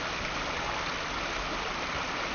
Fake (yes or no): no